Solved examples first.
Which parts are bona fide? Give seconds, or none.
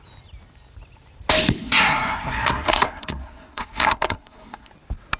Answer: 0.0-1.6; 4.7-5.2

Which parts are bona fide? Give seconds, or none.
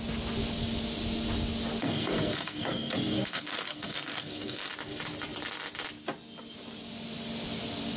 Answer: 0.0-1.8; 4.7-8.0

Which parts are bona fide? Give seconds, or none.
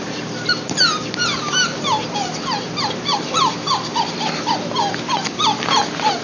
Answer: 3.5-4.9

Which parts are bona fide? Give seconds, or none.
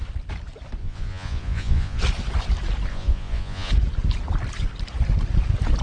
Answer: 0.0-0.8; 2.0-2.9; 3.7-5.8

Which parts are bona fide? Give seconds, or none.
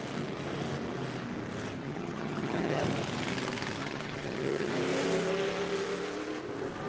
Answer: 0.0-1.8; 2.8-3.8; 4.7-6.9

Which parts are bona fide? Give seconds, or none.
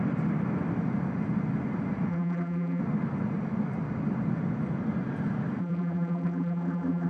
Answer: 0.0-2.1; 2.8-5.6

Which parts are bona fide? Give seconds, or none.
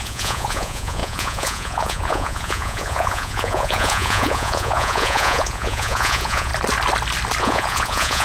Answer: 6.5-7.4